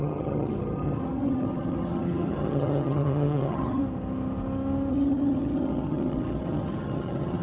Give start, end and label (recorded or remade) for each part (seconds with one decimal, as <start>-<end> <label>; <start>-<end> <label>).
0.0-3.8 remade; 3.8-4.9 recorded; 4.9-7.4 remade